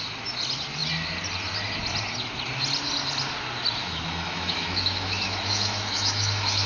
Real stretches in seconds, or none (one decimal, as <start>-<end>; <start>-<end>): 0.0-3.8